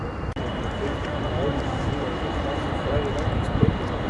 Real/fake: real